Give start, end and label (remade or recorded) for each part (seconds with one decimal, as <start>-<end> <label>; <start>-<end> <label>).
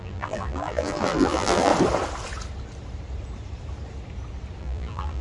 0.0-1.7 remade; 1.7-4.6 recorded; 4.6-5.2 remade